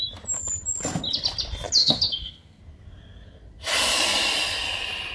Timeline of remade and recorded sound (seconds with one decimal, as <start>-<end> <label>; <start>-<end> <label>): 0.0-1.8 recorded; 1.8-2.6 remade; 2.6-5.1 recorded